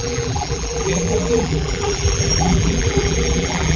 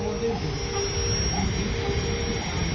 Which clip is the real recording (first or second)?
second